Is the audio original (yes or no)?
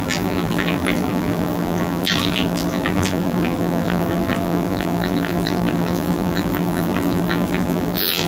no